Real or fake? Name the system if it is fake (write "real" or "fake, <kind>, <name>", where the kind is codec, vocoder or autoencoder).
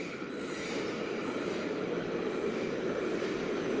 fake, vocoder, BigVGAN v2